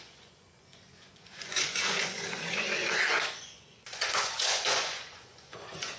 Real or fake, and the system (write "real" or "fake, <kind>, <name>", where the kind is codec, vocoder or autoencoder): fake, vocoder, Vocos